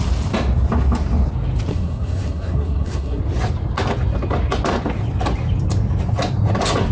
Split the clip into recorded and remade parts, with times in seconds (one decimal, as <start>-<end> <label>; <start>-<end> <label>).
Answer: 0.0-1.7 recorded; 1.7-3.2 remade; 3.2-6.9 recorded